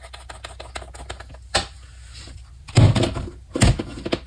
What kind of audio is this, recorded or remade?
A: recorded